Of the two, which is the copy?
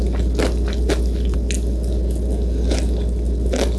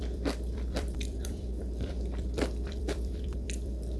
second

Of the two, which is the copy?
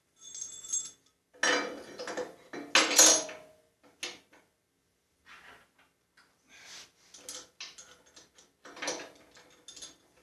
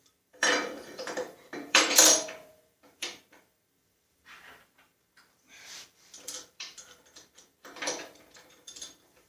second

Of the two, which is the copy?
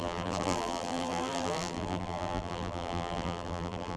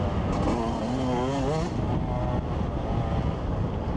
first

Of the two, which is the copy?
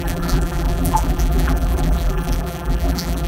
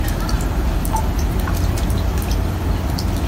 first